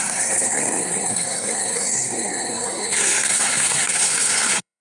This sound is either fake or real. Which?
fake